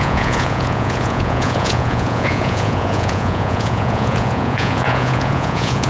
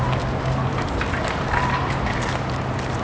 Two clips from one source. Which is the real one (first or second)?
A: second